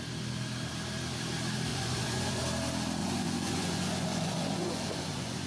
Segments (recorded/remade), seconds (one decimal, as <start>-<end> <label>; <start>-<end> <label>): 0.0-1.7 recorded; 1.7-2.4 remade; 2.4-3.0 recorded; 3.0-5.5 remade